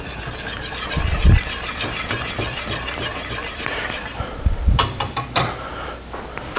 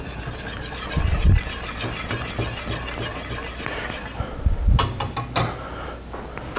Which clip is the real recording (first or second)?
second